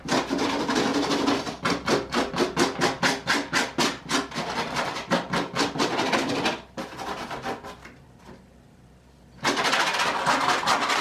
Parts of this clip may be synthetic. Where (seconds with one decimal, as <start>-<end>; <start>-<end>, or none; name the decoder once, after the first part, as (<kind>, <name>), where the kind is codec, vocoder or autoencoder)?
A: none